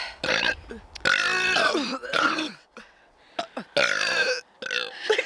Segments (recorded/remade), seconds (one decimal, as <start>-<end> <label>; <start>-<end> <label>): 0.0-2.0 recorded; 2.0-3.2 remade; 3.2-5.3 recorded